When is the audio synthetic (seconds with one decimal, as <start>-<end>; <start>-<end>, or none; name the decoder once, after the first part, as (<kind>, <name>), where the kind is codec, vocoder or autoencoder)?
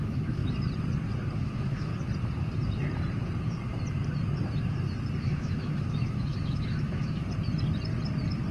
0.0-0.4 (autoencoder, DAC-VAE); 1.4-1.9; 5.2-7.2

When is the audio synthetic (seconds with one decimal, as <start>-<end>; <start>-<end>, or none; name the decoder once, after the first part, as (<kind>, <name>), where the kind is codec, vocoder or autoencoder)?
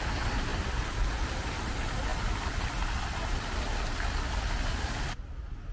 0.5-1.5 (vocoder, BigVGAN v2)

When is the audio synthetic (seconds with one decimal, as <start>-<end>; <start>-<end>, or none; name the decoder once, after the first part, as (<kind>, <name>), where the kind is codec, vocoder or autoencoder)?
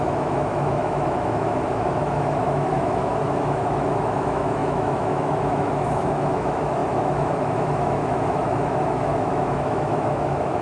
0.0-10.6 (autoencoder, DAC-VAE)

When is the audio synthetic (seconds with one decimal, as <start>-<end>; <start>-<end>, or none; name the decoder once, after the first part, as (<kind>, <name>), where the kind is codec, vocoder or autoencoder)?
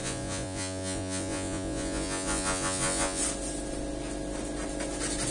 0.0-3.2 (vocoder, Vocos)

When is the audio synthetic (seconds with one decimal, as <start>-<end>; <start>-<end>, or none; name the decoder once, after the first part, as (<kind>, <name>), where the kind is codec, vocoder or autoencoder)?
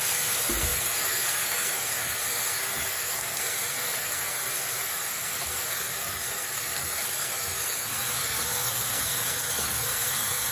0.0-10.5 (codec, SNAC)